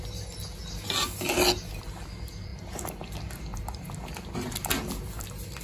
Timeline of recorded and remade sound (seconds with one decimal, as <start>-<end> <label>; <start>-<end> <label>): 0.0-5.6 recorded